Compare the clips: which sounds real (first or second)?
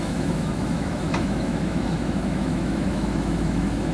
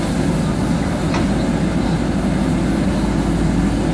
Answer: second